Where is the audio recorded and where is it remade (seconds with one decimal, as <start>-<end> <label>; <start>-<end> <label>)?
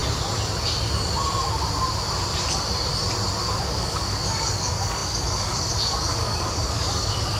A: 0.0-3.4 recorded; 3.4-7.4 remade